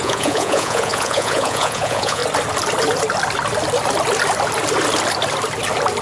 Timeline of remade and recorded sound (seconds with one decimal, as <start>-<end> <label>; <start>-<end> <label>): 0.0-2.2 remade; 2.2-6.0 recorded